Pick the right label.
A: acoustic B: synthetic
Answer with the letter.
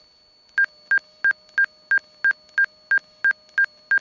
A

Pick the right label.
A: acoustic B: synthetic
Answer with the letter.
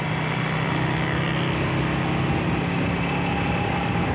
A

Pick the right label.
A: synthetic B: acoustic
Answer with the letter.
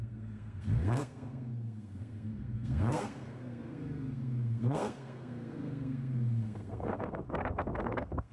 A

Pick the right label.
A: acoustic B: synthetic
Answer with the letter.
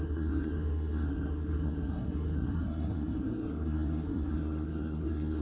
B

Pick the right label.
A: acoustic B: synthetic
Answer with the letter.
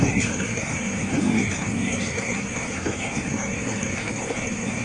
B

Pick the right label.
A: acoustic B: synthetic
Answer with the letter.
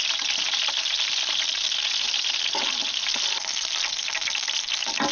A